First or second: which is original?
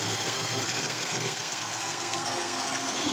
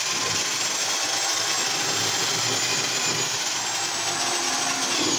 second